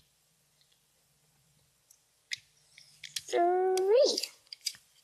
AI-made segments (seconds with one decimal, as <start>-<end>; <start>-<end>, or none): 0.0-2.2; 3.8-5.0